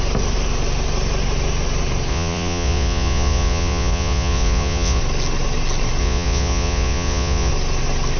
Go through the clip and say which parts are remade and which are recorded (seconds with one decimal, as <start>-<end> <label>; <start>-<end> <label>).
0.0-2.1 recorded; 2.1-5.0 remade; 5.0-6.0 recorded; 6.0-7.5 remade; 7.5-8.2 recorded